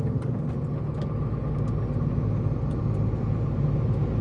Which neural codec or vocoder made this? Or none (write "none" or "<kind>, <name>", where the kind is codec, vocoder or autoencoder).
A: none